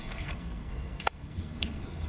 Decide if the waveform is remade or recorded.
remade